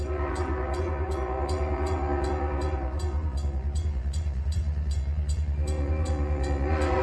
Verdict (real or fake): fake